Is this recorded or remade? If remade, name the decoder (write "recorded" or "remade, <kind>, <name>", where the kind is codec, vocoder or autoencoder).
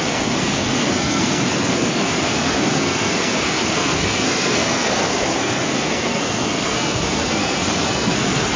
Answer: remade, codec, SNAC